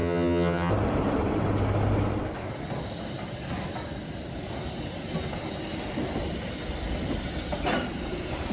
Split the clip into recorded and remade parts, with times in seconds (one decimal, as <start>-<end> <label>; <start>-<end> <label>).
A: 0.0-0.7 remade; 0.7-8.5 recorded